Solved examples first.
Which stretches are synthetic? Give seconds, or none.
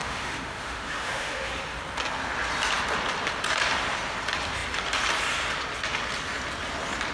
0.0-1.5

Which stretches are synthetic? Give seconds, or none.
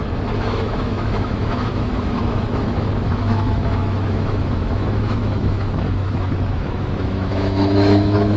0.0-8.4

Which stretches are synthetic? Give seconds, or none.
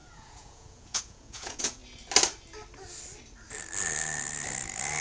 0.0-1.8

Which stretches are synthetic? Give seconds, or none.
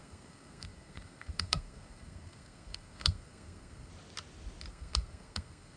0.0-3.9; 4.7-5.8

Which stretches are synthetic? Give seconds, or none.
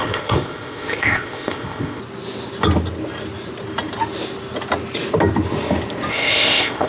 0.0-2.0; 6.1-6.9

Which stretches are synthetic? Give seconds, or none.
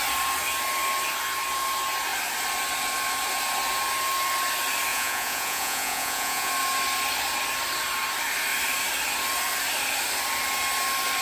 4.9-6.5